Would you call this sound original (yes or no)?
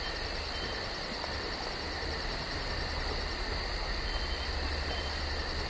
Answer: yes